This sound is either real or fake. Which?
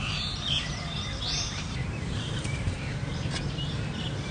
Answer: fake